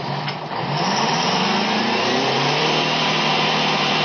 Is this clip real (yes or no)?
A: no